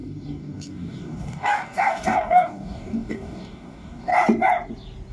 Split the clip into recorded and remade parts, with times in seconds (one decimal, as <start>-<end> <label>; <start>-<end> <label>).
0.0-4.1 remade; 4.1-5.1 recorded